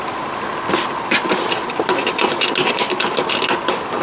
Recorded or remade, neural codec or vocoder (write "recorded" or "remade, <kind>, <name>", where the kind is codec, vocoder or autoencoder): recorded